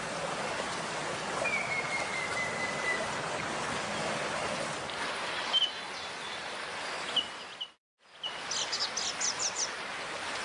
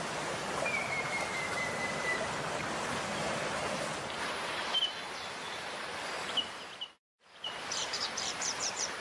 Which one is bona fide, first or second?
first